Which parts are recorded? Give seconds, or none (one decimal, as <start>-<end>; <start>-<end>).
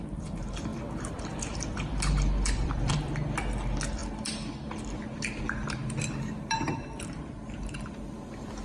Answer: 0.0-0.7; 3.1-8.6